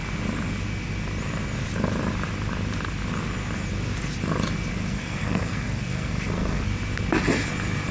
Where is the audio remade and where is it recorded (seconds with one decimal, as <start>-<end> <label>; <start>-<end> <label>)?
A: 0.0-4.7 recorded; 4.7-6.7 remade; 6.7-7.9 recorded